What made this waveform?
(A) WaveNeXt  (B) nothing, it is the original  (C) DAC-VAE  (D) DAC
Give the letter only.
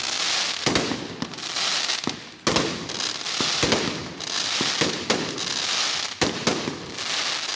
B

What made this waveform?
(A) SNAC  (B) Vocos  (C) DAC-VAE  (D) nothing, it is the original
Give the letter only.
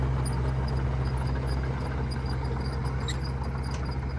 D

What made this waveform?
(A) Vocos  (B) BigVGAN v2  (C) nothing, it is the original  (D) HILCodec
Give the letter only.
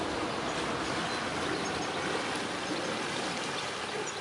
C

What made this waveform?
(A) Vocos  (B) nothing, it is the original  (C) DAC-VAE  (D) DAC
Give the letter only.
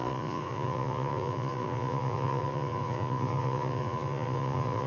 A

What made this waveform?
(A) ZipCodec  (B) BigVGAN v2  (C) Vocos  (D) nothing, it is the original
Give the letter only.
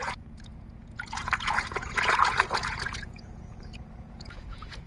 C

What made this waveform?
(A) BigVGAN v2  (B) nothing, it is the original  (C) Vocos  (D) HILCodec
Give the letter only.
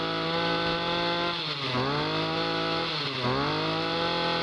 B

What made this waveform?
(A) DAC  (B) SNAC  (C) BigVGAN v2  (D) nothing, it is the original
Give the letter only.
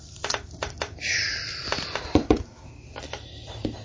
C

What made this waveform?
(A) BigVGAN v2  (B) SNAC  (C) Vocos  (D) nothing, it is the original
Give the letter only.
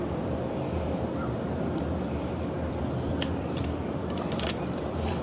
A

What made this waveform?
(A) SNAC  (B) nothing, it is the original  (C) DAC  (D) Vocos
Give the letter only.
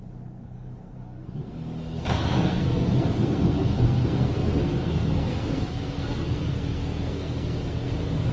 A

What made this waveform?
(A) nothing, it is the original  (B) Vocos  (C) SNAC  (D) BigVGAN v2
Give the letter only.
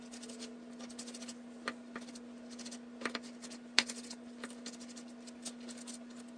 A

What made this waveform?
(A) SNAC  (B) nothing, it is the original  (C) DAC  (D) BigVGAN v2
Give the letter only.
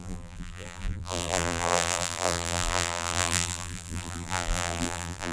D